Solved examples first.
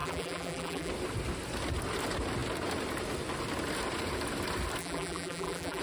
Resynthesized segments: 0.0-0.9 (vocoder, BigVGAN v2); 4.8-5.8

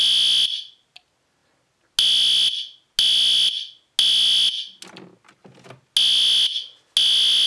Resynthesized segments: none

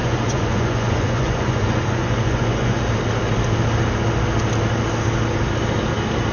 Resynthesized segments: 0.0-2.8 (vocoder, Vocos)

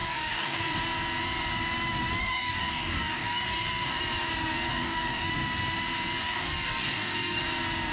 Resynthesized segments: 0.0-0.8 (codec, DAC); 2.2-4.0; 4.7-5.3; 6.2-7.4

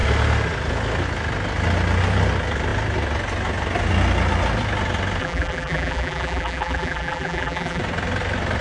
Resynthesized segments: 5.2-7.8 (vocoder, BigVGAN v2)

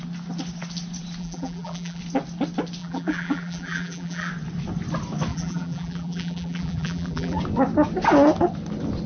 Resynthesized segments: 1.2-2.0 (vocoder, BigVGAN v2); 2.8-4.3; 5.3-7.4